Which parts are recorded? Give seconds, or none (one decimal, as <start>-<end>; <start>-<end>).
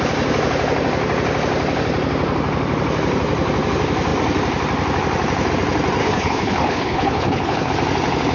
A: 0.0-6.0; 7.7-8.3